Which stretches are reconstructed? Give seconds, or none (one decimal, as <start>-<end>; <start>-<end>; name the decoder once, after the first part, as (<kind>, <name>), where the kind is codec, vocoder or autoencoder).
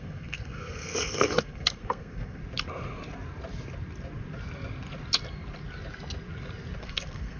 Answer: 0.0-2.4 (codec, SNAC); 6.8-7.4